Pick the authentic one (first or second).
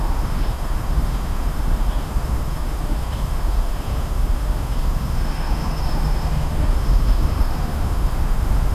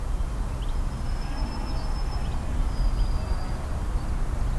second